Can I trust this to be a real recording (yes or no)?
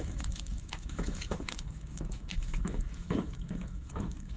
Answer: no